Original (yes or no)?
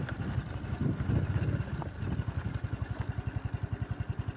yes